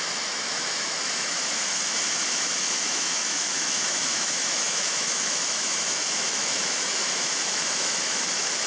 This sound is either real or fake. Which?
fake